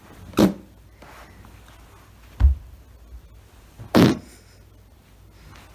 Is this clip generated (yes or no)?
no